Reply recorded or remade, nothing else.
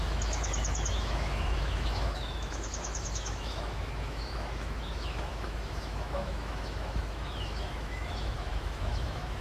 remade